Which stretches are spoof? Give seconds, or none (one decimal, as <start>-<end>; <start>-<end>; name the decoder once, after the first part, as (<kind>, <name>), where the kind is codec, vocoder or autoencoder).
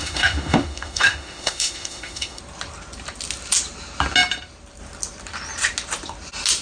0.0-2.4 (autoencoder, DAC-VAE)